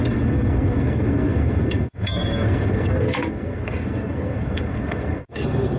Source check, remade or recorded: remade